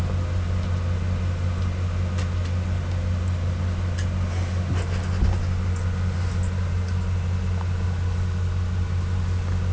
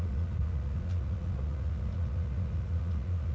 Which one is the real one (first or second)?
first